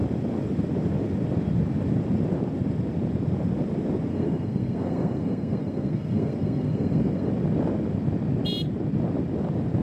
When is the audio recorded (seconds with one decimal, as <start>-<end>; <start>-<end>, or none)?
0.0-4.1; 7.3-9.8